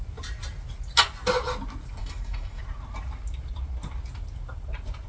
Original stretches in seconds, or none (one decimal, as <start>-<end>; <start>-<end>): 0.0-2.0; 2.6-5.1